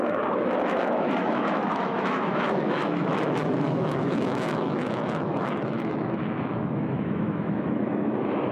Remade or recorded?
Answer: remade